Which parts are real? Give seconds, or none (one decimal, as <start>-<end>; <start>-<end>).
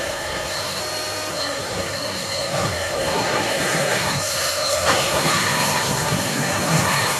0.8-1.3